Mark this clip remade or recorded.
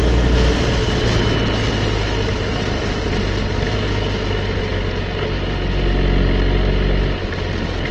recorded